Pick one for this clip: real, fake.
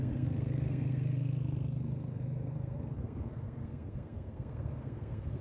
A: fake